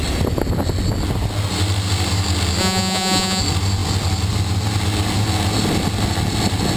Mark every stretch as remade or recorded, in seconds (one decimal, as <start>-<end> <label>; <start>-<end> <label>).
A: 0.0-2.6 recorded; 2.6-3.4 remade; 3.4-6.8 recorded